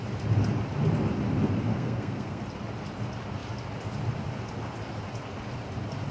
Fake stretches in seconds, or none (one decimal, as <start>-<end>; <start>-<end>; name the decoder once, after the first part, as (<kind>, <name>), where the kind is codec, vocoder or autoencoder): 1.7-2.4 (codec, SNAC)